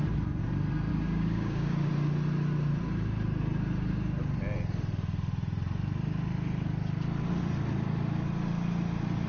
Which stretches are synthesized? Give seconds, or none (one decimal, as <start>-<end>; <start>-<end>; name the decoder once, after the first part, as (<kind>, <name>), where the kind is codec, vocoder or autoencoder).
0.9-1.9 (codec, DAC)